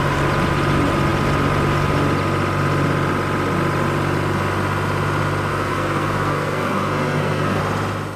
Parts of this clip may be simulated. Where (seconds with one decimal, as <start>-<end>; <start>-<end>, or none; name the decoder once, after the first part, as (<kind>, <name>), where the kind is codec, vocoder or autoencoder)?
5.5-7.6 (codec, SNAC)